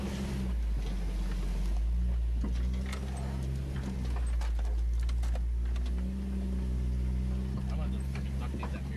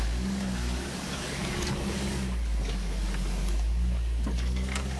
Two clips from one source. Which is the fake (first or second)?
second